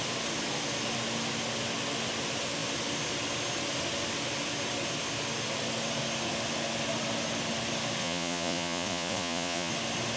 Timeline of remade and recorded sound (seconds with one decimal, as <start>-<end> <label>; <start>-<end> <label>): 0.0-8.0 recorded; 8.0-9.7 remade; 9.7-10.2 recorded